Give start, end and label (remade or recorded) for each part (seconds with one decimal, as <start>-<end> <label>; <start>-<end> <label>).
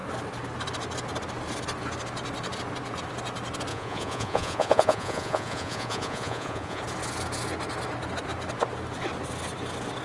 0.0-3.7 recorded; 3.7-6.8 remade; 6.8-10.0 recorded